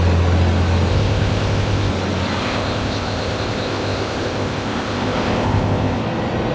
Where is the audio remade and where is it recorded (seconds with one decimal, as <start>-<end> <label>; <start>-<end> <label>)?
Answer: 0.0-0.9 recorded; 0.9-1.9 remade; 1.9-2.4 recorded; 2.4-6.0 remade; 6.0-6.5 recorded